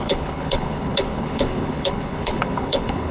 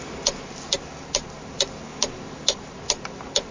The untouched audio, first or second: second